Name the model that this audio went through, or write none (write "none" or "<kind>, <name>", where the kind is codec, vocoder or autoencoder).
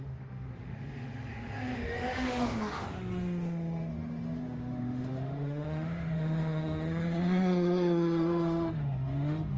autoencoder, DAC-VAE